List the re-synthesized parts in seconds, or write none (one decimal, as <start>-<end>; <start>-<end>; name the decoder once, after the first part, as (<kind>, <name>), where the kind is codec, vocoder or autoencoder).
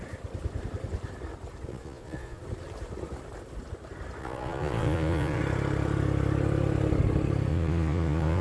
1.7-2.4 (vocoder, Vocos); 4.2-5.4; 7.5-8.4